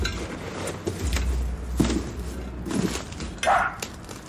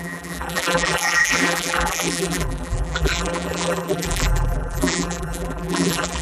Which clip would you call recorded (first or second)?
first